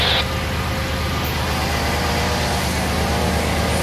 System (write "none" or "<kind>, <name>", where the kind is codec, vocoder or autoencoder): none